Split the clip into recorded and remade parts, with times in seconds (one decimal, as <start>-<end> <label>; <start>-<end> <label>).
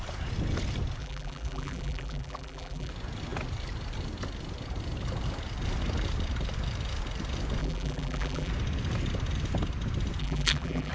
0.0-1.0 recorded; 1.0-2.9 remade; 2.9-7.6 recorded; 7.6-8.5 remade; 8.5-10.2 recorded; 10.2-10.9 remade